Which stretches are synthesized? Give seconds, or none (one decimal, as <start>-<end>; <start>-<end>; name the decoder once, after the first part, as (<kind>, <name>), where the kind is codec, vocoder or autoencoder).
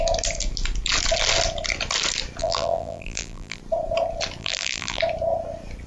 2.4-3.6 (vocoder, BigVGAN v2); 4.4-5.0